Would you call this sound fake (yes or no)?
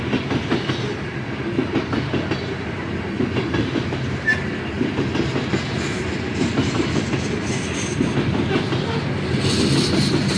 no